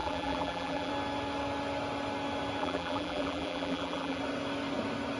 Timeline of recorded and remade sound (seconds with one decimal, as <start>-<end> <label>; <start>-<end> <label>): 0.0-0.9 remade; 0.9-2.6 recorded; 2.6-4.2 remade; 4.2-5.2 recorded